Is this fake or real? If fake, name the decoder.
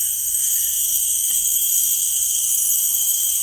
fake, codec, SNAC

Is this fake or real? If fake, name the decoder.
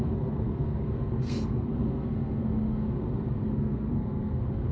fake, codec, SNAC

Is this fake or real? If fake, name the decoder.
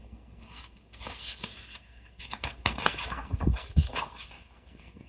fake, codec, SNAC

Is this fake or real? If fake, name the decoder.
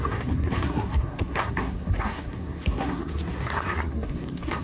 fake, codec, SNAC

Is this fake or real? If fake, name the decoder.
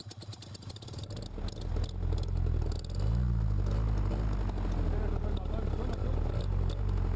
real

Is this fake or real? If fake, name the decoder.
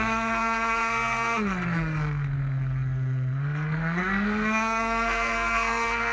fake, codec, SNAC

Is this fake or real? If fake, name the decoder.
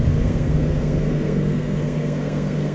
fake, codec, SNAC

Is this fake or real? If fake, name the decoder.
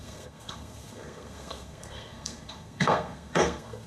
fake, codec, SNAC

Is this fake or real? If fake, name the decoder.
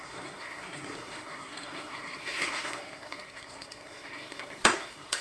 fake, codec, SNAC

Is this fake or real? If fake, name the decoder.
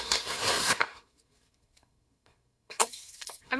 fake, codec, SNAC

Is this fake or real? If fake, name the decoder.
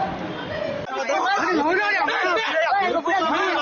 real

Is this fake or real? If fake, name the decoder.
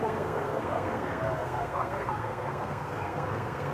fake, codec, SNAC